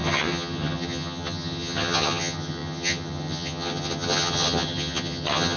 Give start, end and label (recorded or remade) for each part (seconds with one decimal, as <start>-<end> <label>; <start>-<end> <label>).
0.0-5.6 remade